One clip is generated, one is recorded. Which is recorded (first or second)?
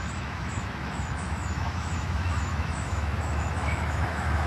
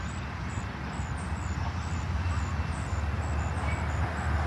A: second